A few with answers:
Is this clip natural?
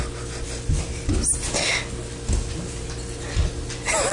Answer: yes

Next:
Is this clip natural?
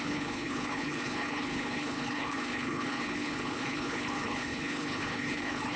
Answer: no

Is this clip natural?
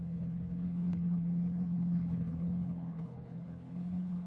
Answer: no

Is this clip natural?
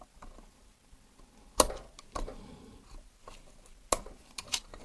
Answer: yes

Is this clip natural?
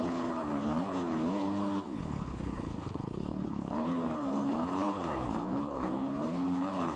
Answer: no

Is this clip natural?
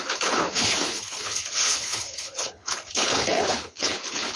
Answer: no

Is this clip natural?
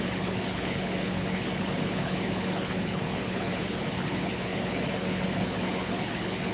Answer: no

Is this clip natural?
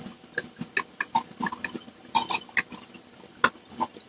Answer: yes